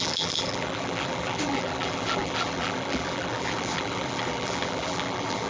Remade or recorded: remade